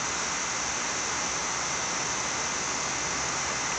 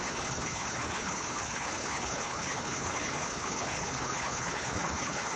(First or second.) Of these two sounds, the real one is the first